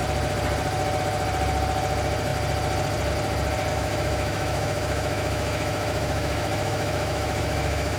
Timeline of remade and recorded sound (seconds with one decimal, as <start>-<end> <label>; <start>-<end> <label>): 0.0-3.7 recorded; 3.7-8.0 remade